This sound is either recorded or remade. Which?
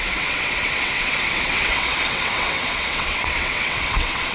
remade